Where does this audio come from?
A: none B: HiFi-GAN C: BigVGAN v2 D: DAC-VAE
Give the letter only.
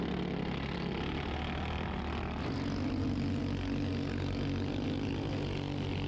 A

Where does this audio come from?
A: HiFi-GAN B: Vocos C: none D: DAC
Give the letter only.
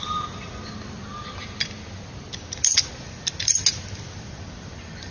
C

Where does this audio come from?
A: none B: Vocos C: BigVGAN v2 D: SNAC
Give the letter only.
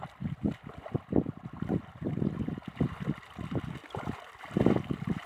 A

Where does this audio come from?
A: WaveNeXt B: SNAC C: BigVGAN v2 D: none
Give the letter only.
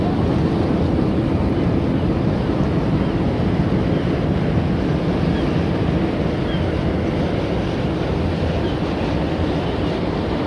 D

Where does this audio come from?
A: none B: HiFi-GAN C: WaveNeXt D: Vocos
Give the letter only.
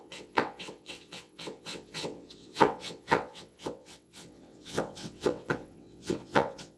C